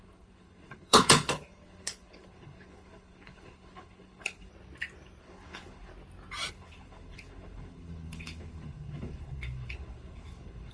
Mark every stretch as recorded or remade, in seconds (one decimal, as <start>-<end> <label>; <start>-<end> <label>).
0.0-4.5 remade; 4.5-5.2 recorded; 5.2-5.9 remade; 5.9-6.5 recorded; 6.5-10.7 remade